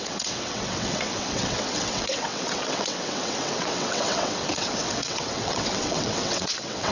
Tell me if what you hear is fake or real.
fake